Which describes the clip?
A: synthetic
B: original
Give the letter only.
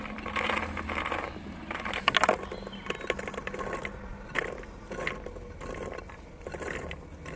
B